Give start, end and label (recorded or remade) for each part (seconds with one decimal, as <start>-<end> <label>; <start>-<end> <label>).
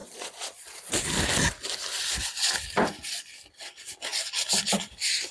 0.0-0.9 remade; 0.9-5.3 recorded